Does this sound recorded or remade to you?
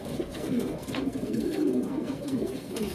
remade